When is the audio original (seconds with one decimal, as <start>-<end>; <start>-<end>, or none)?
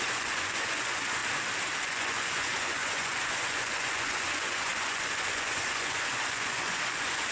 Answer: 1.2-1.8